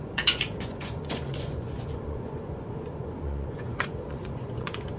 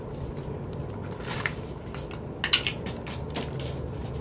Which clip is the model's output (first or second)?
first